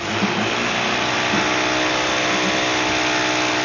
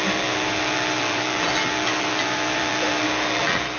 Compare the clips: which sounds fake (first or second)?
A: second